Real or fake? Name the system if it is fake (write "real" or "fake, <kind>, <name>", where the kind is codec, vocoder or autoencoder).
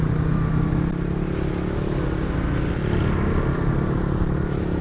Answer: real